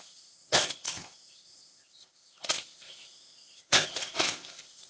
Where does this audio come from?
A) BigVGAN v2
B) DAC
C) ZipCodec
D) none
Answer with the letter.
C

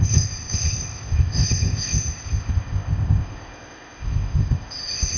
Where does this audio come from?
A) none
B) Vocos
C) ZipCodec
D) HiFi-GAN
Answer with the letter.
C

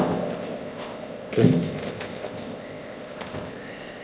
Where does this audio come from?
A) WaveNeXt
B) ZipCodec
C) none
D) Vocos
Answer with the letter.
B